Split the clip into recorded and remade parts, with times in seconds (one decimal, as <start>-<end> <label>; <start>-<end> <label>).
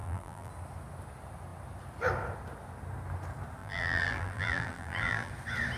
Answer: 0.0-0.5 remade; 0.5-3.6 recorded; 3.6-5.3 remade; 5.3-5.8 recorded